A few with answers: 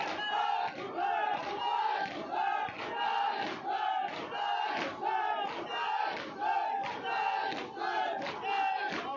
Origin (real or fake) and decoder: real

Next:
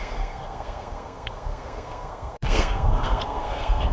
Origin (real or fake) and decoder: fake, codec, SNAC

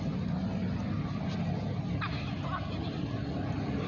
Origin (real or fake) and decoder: real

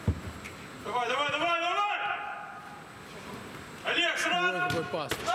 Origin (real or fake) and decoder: real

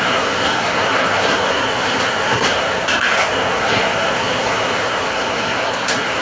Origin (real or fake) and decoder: fake, codec, SNAC